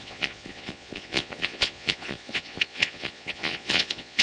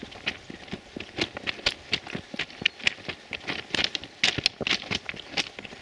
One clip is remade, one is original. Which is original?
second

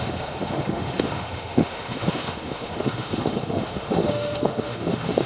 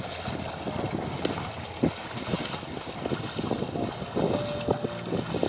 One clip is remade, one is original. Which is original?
second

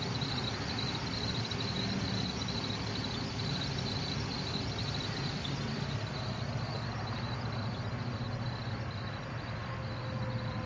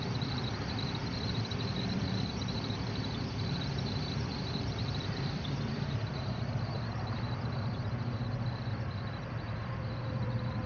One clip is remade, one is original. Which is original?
first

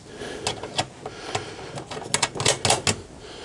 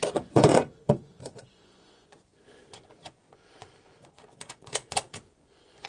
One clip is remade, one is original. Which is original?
first